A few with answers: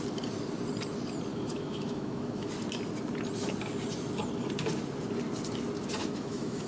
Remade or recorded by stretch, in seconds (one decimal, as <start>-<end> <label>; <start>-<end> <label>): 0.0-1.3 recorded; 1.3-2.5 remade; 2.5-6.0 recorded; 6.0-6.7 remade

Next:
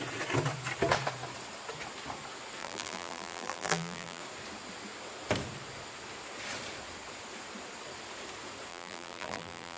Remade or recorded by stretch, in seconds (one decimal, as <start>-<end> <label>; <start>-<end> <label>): 0.0-2.6 recorded; 2.6-4.2 remade; 4.2-8.7 recorded; 8.7-9.8 remade

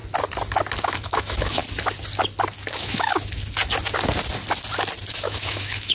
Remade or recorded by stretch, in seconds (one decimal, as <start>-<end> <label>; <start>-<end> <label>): 0.0-0.8 recorded; 0.8-1.6 remade; 1.6-2.7 recorded; 2.7-3.1 remade; 3.1-5.1 recorded; 5.1-5.9 remade

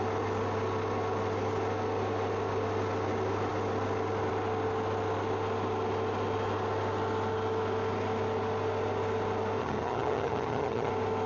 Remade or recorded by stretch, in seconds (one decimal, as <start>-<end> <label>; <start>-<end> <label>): 0.0-9.6 recorded; 9.6-10.9 remade; 10.9-11.3 recorded